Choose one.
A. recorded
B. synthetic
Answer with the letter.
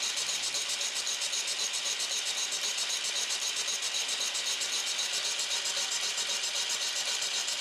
A